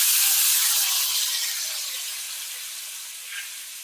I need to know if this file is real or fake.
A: real